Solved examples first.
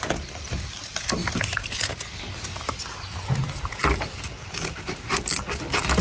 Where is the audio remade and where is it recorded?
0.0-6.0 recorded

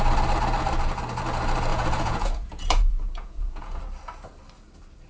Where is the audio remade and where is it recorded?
0.0-1.7 recorded; 1.7-3.8 remade; 3.8-5.1 recorded

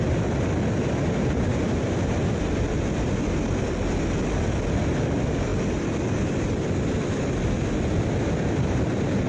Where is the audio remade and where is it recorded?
0.0-9.3 recorded

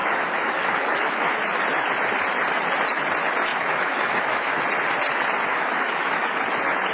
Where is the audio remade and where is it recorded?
0.0-1.3 remade; 1.3-3.5 recorded; 3.5-4.6 remade; 4.6-5.5 recorded; 5.5-6.4 remade; 6.4-6.9 recorded

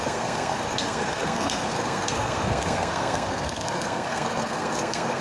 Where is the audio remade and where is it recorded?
0.0-5.2 remade

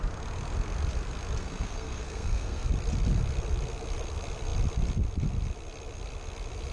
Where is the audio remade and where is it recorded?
0.0-1.4 recorded; 1.4-2.7 remade; 2.7-6.7 recorded

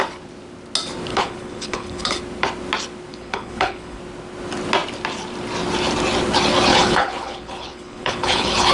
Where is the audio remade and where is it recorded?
0.0-1.1 recorded; 1.1-2.2 remade; 2.2-3.1 recorded; 3.1-4.0 remade; 4.0-6.7 recorded; 6.7-8.7 remade

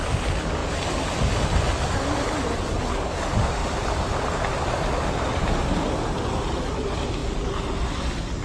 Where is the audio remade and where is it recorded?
0.0-3.6 recorded; 3.6-5.9 remade; 5.9-8.4 recorded